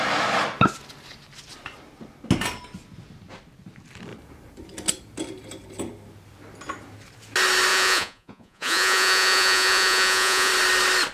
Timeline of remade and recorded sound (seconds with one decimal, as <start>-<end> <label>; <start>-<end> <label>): 0.0-7.7 recorded; 7.7-10.5 remade; 10.5-11.1 recorded